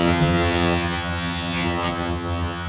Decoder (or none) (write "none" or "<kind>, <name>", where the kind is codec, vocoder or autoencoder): vocoder, HiFi-GAN